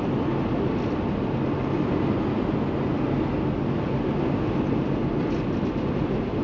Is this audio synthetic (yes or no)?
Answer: no